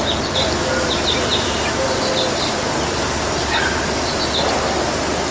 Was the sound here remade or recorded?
recorded